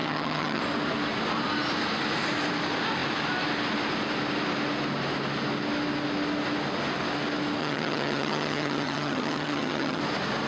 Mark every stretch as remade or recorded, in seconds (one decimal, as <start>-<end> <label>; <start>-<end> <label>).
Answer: 0.0-0.6 remade; 0.6-7.6 recorded; 7.6-10.0 remade; 10.0-10.5 recorded

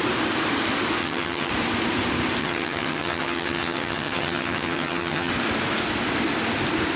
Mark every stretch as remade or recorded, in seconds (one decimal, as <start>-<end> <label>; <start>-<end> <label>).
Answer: 0.0-1.0 recorded; 1.0-1.5 remade; 1.5-2.4 recorded; 2.4-5.3 remade; 5.3-7.0 recorded

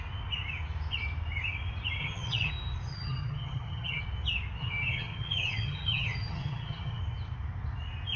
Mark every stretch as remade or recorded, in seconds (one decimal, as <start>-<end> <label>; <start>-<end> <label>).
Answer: 0.0-2.0 recorded; 2.0-2.5 remade; 2.5-2.9 recorded; 2.9-4.0 remade; 4.0-4.6 recorded; 4.6-7.0 remade; 7.0-8.2 recorded

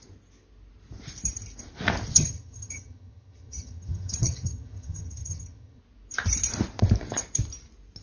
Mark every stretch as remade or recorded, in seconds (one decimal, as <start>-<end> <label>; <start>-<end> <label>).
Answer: 0.0-2.1 recorded; 2.1-5.8 remade; 5.8-8.0 recorded